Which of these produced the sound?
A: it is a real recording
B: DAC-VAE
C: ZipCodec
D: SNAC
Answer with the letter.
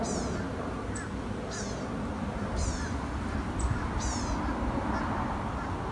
A